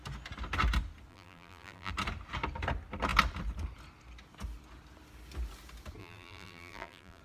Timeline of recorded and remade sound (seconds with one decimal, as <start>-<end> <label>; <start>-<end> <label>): 0.0-1.1 recorded; 1.1-1.9 remade; 1.9-6.0 recorded; 6.0-7.2 remade